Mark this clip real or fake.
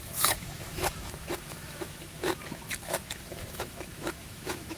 fake